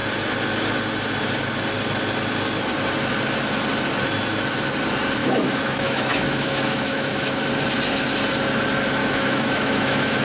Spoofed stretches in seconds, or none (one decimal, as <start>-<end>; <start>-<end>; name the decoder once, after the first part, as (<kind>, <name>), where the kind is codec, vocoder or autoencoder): 5.2-7.5 (autoencoder, DAC-VAE); 9.0-10.2